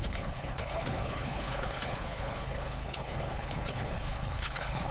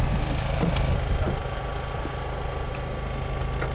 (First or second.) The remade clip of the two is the first